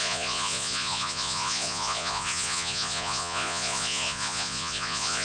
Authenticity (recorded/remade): remade